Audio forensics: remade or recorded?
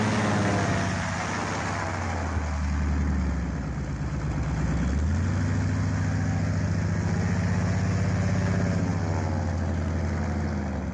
recorded